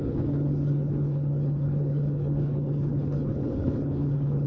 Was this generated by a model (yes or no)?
yes